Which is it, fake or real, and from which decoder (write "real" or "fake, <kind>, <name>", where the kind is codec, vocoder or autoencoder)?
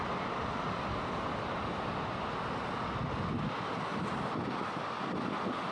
real